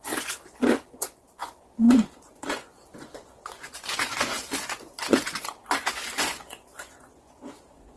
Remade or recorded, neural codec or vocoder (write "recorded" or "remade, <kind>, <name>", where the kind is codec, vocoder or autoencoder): remade, vocoder, Vocos